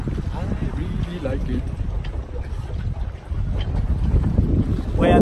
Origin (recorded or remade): recorded